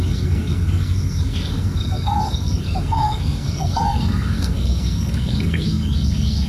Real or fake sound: fake